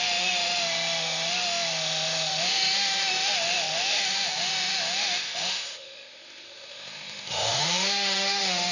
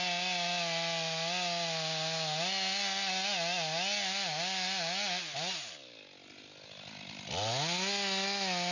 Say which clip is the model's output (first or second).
first